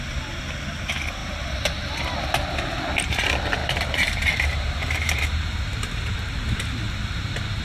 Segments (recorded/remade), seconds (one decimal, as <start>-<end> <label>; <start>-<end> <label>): 0.0-3.6 recorded; 3.6-7.6 remade